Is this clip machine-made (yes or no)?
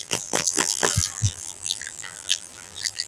yes